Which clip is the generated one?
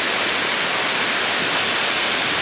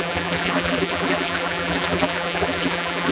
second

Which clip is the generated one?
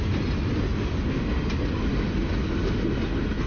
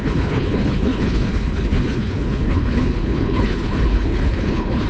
second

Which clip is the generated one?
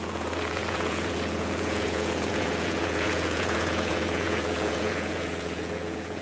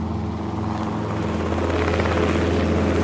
first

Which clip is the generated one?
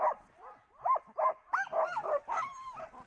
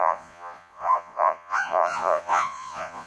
second